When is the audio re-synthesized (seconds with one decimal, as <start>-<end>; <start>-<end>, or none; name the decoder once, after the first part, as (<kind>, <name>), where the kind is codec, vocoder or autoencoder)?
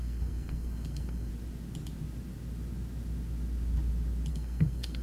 0.0-1.3 (codec, SNAC); 4.3-5.0